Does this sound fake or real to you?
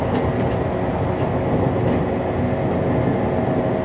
real